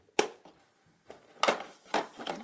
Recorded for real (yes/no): yes